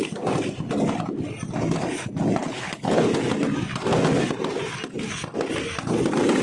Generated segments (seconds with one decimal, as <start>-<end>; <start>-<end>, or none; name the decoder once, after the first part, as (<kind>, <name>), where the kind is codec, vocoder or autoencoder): 2.4-3.1 (codec, HILCodec)

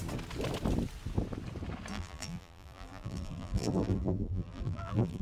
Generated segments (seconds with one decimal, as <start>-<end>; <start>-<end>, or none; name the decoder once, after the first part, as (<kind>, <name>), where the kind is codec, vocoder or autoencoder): 1.9-5.2 (vocoder, BigVGAN v2)

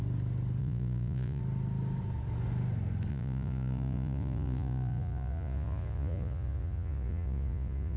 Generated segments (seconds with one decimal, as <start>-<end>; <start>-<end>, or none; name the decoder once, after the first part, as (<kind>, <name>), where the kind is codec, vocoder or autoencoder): 0.6-1.4 (vocoder, Vocos); 3.1-8.0

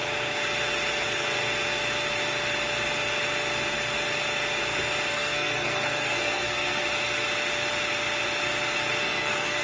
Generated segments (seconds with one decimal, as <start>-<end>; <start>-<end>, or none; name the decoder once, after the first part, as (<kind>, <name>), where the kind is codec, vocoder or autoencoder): 5.1-6.8 (codec, SNAC); 9.0-9.6

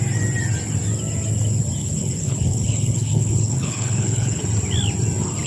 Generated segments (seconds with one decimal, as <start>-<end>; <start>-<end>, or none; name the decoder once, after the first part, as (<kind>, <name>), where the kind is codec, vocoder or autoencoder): 1.8-4.4 (codec, HILCodec)

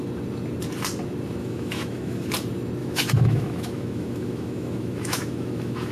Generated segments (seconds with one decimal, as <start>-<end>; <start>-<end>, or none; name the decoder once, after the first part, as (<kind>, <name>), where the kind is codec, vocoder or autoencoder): 1.4-2.3 (autoencoder, DAC-VAE); 2.8-5.9